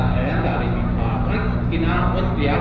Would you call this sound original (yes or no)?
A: yes